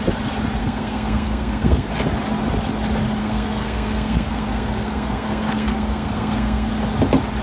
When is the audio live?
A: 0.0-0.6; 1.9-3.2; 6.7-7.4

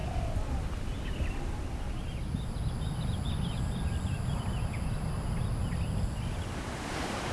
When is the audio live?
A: 0.0-7.3

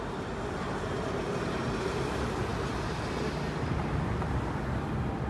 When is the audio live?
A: 0.0-5.3

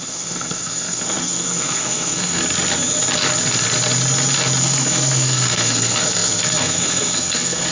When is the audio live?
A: 2.4-4.6

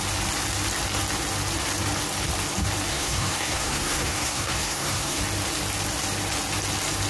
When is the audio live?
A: 0.0-2.9; 5.2-7.1

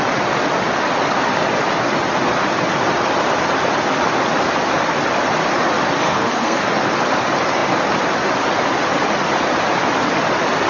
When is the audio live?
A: 0.0-6.0; 6.6-10.7